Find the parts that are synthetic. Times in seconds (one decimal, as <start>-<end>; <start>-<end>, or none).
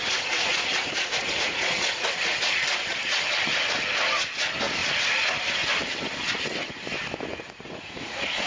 0.0-2.5; 7.3-8.5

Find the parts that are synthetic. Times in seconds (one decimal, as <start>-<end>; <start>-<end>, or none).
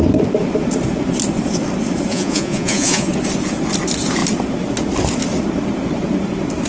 2.1-3.1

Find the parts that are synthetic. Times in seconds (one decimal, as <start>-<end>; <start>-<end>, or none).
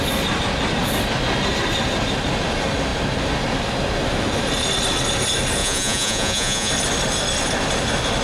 5.6-6.7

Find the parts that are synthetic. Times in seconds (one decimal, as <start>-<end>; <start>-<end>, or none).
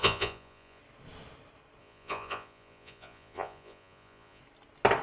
0.0-0.8; 1.8-4.4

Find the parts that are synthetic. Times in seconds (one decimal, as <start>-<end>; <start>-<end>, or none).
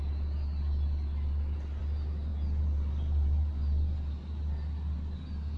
none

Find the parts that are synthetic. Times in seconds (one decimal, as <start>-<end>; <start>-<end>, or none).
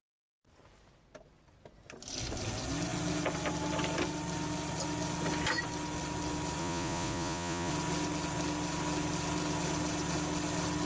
6.6-7.7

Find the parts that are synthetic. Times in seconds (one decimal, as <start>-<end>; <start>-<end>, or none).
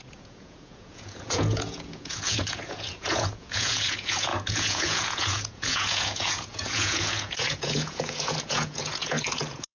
0.0-9.7